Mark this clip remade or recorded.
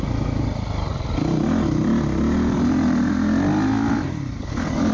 recorded